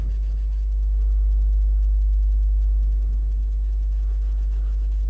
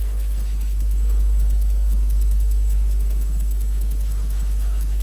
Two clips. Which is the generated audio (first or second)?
second